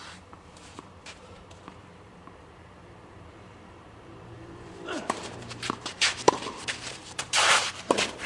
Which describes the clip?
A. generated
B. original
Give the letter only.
A